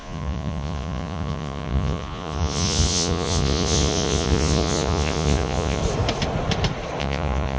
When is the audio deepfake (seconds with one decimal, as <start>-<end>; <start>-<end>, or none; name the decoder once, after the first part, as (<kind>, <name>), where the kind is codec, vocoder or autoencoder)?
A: 0.0-5.8 (vocoder, Vocos); 7.0-7.6